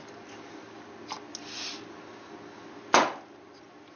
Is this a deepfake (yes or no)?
no